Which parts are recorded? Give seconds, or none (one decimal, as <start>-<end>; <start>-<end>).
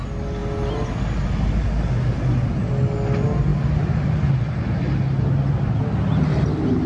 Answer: 0.0-6.9